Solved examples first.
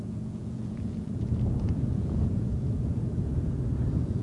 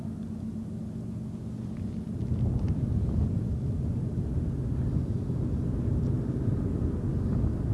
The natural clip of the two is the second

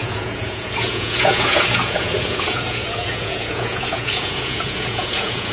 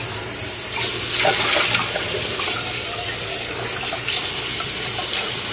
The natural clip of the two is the second